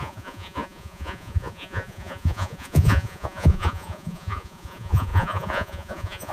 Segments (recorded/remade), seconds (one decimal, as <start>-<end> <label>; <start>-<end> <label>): 0.0-6.3 remade